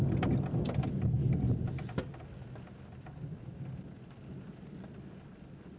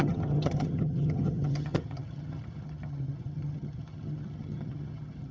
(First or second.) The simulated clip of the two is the second